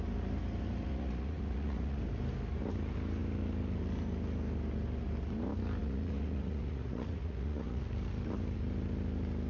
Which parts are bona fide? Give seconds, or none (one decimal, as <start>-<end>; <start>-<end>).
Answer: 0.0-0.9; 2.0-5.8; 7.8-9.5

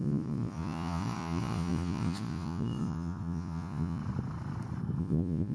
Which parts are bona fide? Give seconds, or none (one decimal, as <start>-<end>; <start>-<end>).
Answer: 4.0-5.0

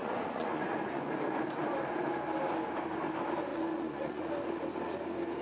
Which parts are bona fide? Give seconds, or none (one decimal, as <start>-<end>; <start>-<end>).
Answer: 1.1-3.5; 4.3-5.4